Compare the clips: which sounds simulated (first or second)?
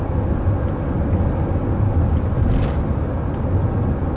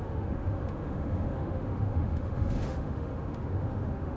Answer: second